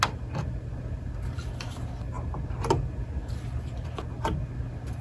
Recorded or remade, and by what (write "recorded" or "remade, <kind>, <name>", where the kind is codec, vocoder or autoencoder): recorded